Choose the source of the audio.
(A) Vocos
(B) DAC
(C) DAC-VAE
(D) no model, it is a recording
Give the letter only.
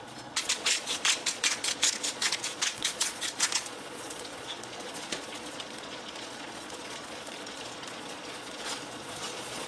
A